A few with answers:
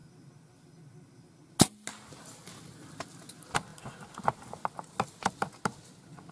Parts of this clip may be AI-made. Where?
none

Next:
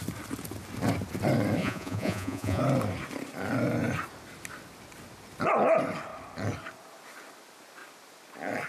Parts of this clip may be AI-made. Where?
1.6-2.6 (vocoder, Vocos)

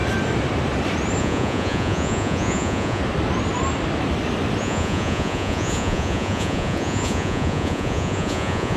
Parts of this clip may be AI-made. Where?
1.2-3.0 (vocoder, Vocos); 4.6-8.8

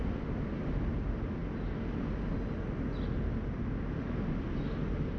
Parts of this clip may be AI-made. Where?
none